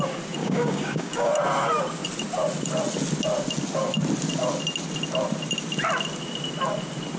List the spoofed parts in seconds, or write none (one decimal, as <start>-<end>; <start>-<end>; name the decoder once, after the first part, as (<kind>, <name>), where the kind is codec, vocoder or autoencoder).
0.4-1.3 (codec, DAC)